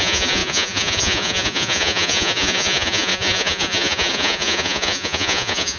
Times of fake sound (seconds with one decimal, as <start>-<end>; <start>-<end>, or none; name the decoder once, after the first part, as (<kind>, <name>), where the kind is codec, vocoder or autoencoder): 0.0-5.8 (vocoder, Vocos)